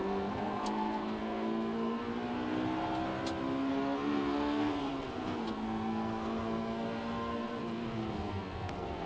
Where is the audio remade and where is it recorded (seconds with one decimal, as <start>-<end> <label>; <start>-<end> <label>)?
0.0-2.1 remade; 2.1-3.7 recorded; 3.7-9.1 remade